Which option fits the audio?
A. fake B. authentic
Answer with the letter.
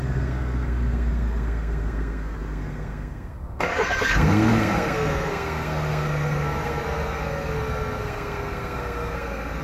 A